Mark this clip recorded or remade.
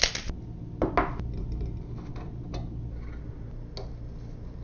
recorded